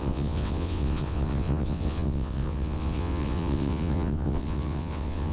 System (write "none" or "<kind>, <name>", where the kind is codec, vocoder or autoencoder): vocoder, WaveNeXt